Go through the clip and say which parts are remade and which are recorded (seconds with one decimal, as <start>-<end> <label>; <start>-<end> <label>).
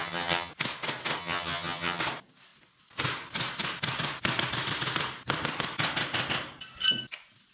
0.0-0.5 remade; 0.5-1.2 recorded; 1.2-2.0 remade; 2.0-7.5 recorded